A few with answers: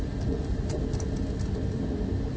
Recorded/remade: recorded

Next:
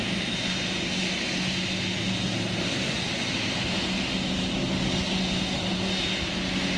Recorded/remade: recorded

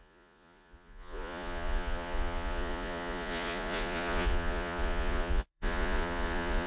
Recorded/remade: remade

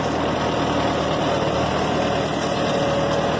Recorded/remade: recorded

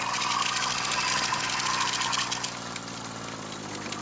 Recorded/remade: recorded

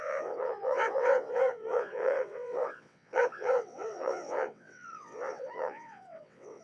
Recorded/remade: remade